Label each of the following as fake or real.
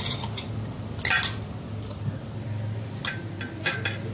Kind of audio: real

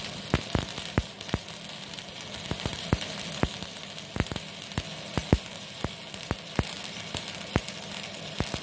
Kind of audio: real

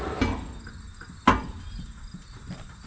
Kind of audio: real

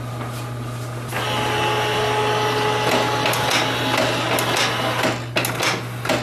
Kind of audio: real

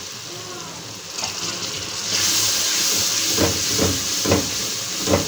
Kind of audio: real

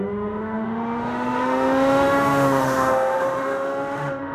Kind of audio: fake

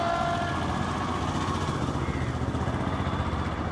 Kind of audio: real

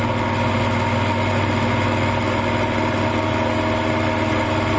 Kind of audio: real